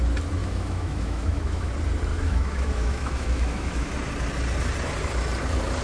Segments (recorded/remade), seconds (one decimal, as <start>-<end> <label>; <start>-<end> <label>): 0.0-0.4 recorded; 0.4-1.7 remade; 1.7-2.1 recorded; 2.1-3.9 remade; 3.9-5.8 recorded